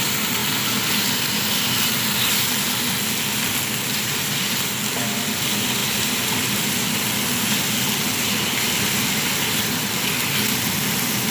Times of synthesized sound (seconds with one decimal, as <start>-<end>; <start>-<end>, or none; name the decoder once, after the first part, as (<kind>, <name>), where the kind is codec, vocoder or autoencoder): none